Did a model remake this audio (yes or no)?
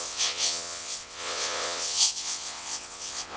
yes